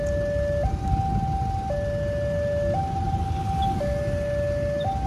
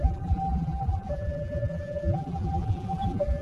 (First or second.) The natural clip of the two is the first